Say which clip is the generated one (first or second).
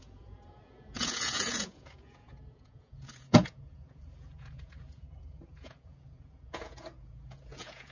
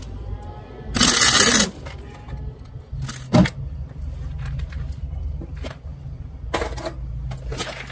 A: first